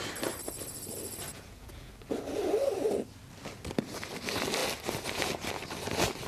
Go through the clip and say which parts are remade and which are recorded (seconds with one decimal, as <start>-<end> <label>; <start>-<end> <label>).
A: 0.0-1.3 recorded; 1.3-1.9 remade; 1.9-6.3 recorded